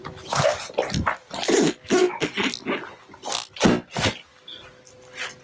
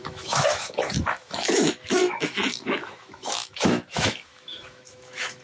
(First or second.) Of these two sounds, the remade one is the second